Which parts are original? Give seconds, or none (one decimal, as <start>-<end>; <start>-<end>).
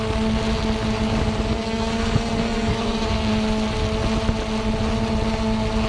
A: 0.0-1.5; 3.3-5.9